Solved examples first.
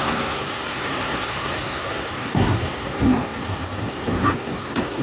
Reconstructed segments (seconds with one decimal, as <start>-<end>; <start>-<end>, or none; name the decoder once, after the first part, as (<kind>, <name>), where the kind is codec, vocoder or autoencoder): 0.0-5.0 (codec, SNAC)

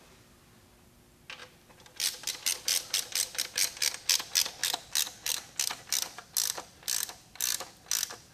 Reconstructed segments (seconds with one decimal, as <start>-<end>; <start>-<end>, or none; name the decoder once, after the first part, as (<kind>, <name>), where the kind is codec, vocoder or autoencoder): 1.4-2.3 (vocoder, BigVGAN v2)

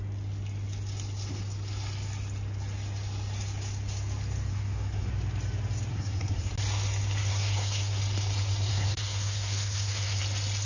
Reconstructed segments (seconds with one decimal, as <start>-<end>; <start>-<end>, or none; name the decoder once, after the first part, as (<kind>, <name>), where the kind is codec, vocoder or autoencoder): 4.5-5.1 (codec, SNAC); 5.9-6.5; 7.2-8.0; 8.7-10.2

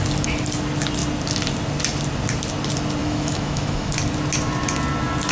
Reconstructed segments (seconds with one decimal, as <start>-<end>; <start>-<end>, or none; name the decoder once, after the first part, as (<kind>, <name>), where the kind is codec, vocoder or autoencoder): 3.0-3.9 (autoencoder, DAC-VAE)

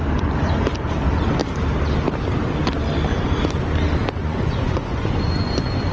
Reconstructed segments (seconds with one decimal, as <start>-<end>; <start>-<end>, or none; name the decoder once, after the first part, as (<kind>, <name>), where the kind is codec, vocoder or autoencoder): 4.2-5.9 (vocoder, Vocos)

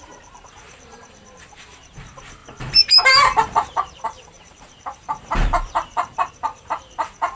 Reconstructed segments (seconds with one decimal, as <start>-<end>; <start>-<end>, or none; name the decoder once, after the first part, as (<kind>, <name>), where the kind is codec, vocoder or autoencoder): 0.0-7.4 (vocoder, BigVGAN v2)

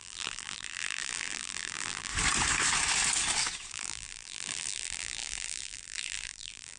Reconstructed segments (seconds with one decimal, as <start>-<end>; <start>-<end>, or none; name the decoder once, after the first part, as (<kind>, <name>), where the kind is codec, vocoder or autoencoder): 0.0-2.1 (vocoder, BigVGAN v2); 3.7-6.8

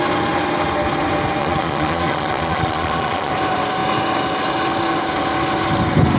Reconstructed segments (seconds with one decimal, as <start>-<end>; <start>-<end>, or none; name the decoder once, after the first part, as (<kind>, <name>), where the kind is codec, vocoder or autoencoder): 1.4-3.3 (vocoder, Vocos)